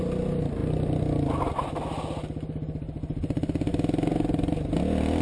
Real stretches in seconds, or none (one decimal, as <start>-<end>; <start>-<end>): 0.0-5.2